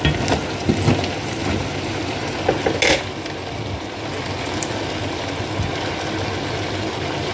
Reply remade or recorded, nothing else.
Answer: recorded